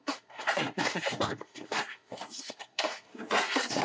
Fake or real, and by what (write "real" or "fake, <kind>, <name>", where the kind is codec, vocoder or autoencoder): fake, codec, SNAC